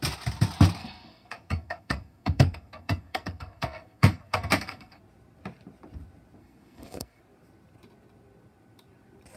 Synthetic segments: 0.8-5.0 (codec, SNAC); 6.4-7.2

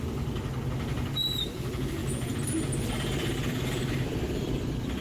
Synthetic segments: none

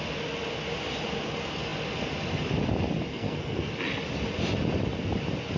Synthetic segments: 3.1-3.7 (codec, SNAC)

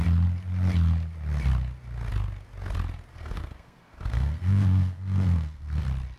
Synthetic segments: 3.1-5.8 (codec, SNAC)

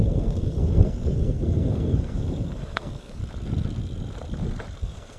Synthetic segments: 0.0-3.2 (codec, SNAC); 4.8-5.2

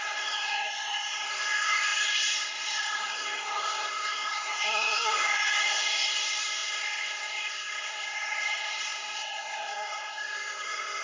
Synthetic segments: 0.0-11.0 (codec, SNAC)